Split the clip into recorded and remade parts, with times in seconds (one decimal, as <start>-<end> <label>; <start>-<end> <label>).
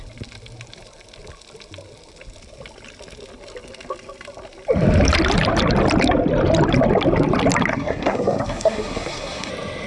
0.0-7.7 recorded; 7.7-9.5 remade; 9.5-9.9 recorded